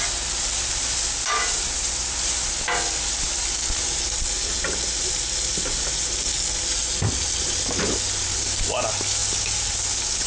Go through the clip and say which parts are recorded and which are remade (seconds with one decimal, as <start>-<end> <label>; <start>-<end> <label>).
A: 0.0-10.3 recorded